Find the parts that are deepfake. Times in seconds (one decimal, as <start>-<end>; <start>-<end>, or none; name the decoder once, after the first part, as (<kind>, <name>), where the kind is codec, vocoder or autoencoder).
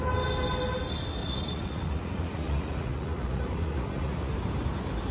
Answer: 1.2-4.3 (vocoder, Vocos)